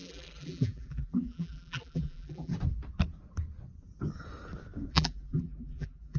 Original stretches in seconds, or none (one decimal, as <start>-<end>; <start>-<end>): 2.5-4.9